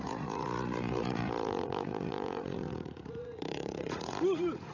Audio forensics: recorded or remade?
remade